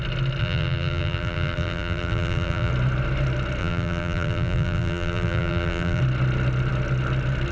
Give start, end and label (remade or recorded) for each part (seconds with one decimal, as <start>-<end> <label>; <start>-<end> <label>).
0.0-0.4 recorded; 0.4-2.7 remade; 2.7-3.6 recorded; 3.6-6.0 remade; 6.0-7.5 recorded